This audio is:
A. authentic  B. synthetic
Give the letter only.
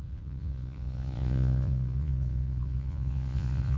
B